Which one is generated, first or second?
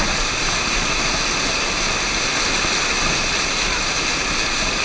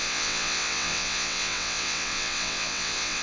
second